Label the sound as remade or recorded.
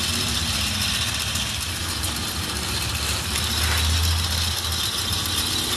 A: recorded